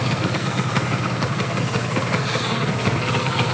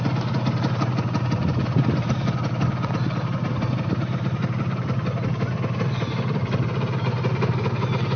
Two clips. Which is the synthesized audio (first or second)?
first